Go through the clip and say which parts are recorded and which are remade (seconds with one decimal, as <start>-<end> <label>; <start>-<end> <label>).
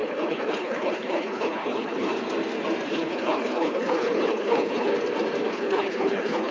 0.0-2.1 remade; 2.1-2.9 recorded; 2.9-4.9 remade; 4.9-5.5 recorded; 5.5-6.5 remade